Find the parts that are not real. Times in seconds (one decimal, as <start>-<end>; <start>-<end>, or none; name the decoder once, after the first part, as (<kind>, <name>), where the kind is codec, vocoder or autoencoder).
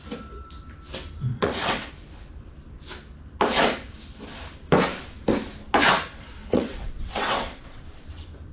1.3-1.9 (vocoder, WaveNeXt); 6.4-7.8